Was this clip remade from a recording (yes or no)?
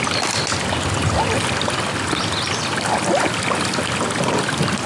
no